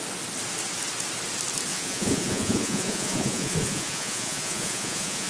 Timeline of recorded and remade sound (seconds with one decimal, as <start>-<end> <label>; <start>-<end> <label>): 0.0-1.7 recorded; 1.7-5.3 remade